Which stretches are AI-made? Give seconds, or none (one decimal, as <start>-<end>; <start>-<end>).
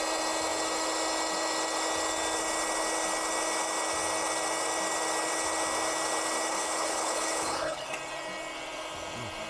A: 6.5-7.9